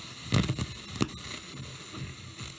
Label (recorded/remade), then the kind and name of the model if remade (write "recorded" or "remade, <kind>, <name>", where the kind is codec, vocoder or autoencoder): recorded